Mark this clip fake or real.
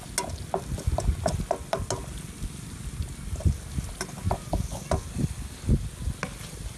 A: real